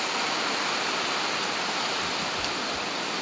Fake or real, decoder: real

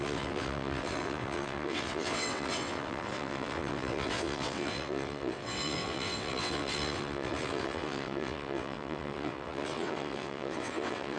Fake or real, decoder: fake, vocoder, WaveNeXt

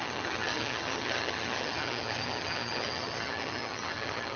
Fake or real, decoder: fake, vocoder, HiFi-GAN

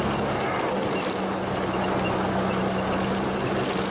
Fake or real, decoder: real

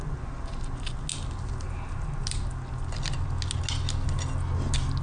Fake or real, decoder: real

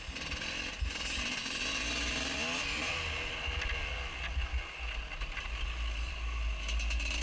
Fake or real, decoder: real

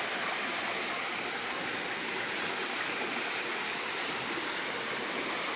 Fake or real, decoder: real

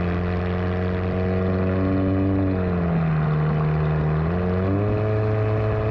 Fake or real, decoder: real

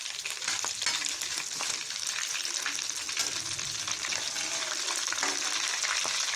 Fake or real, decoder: real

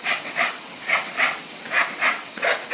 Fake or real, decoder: fake, vocoder, WaveNeXt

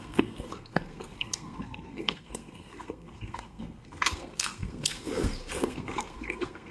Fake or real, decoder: fake, codec, SNAC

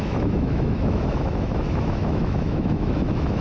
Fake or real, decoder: fake, autoencoder, DAC-VAE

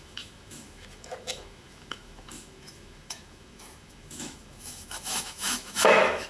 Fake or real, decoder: fake, autoencoder, DAC-VAE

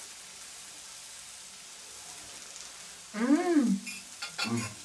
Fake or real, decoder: real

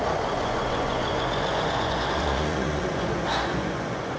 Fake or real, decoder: fake, vocoder, Vocos